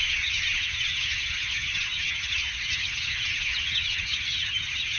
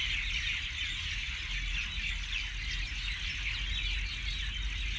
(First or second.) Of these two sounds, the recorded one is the second